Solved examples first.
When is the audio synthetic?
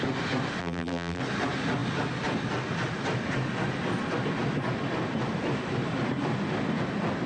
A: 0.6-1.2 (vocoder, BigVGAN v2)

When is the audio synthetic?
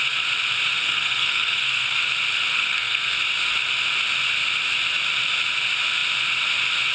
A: 0.8-2.0 (codec, SNAC); 2.5-3.2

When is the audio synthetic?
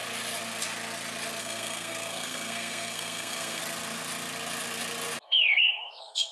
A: 1.4-3.6 (codec, SNAC); 5.2-6.3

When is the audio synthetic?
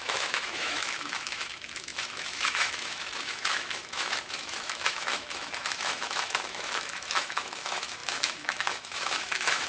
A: 0.0-9.7 (autoencoder, DAC-VAE)